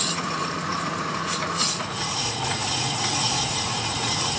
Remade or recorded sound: remade